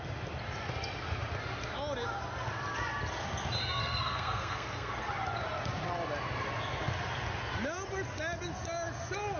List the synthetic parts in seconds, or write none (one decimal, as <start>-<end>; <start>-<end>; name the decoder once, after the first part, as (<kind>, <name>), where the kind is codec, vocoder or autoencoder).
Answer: 3.8-5.0 (codec, SNAC)